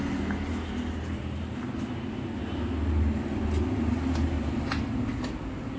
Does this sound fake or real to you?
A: real